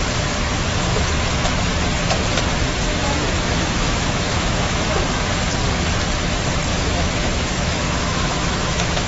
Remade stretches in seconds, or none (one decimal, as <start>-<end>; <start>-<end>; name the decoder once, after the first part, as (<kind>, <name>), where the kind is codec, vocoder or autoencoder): 2.9-4.9 (autoencoder, DAC-VAE); 6.7-9.1